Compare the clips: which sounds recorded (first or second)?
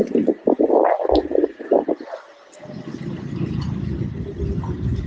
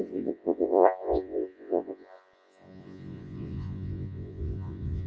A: first